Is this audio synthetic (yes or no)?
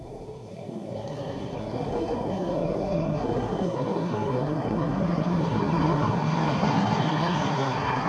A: yes